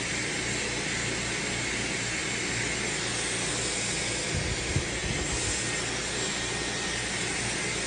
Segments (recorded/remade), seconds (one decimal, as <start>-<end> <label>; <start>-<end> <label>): 0.0-7.9 recorded